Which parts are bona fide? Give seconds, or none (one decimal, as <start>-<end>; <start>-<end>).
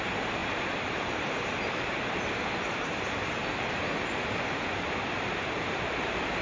0.0-0.4; 4.1-6.4